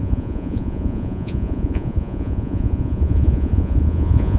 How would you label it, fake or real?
fake